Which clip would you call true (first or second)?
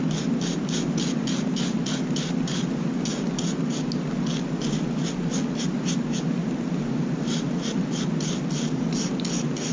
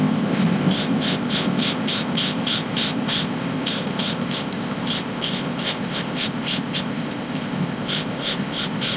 first